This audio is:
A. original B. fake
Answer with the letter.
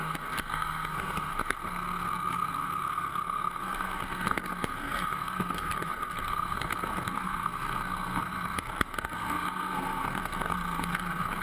B